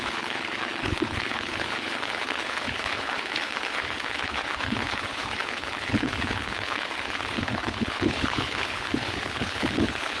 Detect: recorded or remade remade